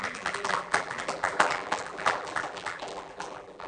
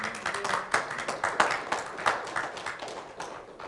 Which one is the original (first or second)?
second